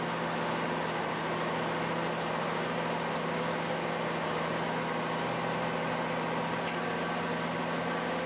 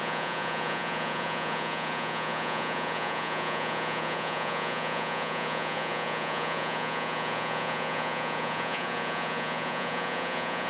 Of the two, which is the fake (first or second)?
second